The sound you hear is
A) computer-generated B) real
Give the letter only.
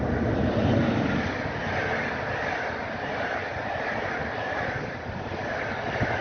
B